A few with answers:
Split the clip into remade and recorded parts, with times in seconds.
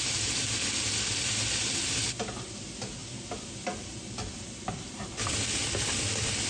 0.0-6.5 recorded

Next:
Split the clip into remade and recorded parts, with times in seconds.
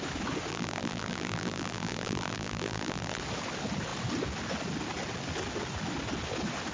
0.0-0.5 recorded; 0.5-3.2 remade; 3.2-6.7 recorded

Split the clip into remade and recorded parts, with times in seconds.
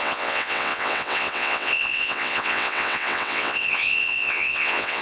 0.0-5.0 remade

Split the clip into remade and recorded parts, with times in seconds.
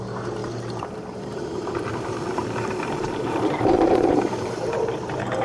0.0-5.4 remade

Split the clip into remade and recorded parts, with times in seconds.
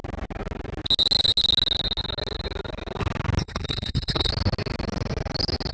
0.0-3.4 recorded; 3.4-4.3 remade; 4.3-5.7 recorded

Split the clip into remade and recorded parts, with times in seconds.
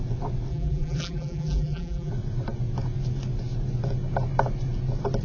0.0-0.5 recorded; 0.5-2.1 remade; 2.1-5.2 recorded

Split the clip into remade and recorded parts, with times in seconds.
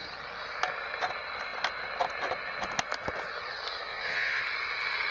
0.0-3.9 recorded; 3.9-4.4 remade; 4.4-5.1 recorded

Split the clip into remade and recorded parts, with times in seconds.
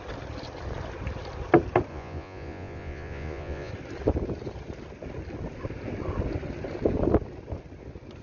0.0-1.9 recorded; 1.9-3.7 remade; 3.7-8.2 recorded